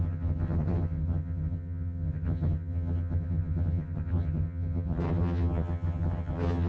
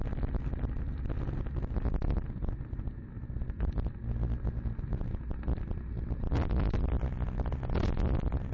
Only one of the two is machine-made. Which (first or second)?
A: first